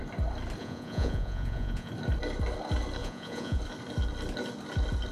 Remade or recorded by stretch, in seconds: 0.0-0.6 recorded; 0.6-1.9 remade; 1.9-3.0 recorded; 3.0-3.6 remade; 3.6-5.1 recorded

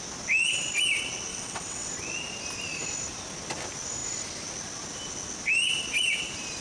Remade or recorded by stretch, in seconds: 0.0-1.3 recorded; 1.3-1.9 remade; 1.9-6.6 recorded